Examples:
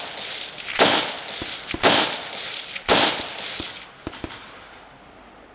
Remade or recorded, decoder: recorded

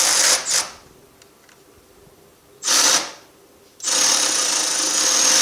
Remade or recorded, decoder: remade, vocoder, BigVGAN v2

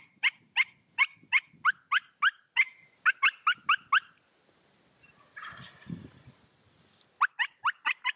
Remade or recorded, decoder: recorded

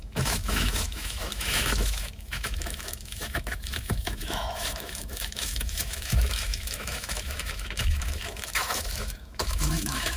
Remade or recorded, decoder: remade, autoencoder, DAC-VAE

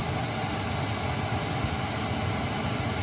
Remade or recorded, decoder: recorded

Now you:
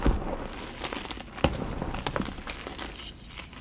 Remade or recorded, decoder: recorded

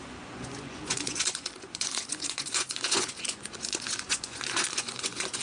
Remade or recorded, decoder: remade, vocoder, Vocos